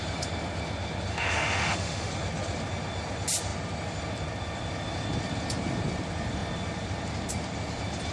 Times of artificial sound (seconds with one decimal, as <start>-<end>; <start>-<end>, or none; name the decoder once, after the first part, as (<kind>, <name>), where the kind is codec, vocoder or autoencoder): 1.1-2.1 (autoencoder, DAC-VAE)